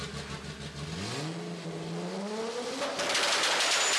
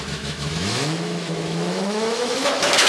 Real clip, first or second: first